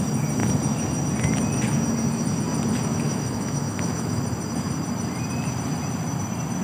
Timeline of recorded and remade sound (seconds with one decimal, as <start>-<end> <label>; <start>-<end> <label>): 0.0-2.9 recorded; 2.9-4.2 remade; 4.2-6.6 recorded